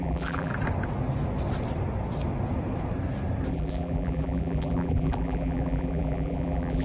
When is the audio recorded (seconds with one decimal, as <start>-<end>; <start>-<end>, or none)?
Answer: 0.5-3.5